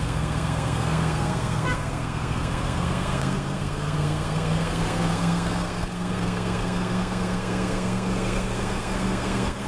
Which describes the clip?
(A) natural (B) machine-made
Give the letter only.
B